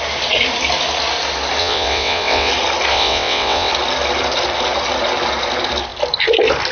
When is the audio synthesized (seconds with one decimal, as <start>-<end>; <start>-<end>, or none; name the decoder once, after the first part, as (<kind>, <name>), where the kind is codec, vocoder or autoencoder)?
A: 1.6-2.5 (vocoder, WaveNeXt); 2.9-3.7